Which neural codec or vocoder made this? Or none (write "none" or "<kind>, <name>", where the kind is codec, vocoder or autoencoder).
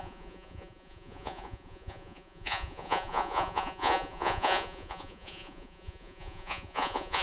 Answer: vocoder, Vocos